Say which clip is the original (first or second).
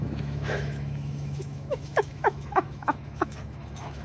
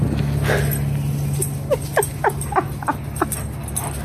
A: second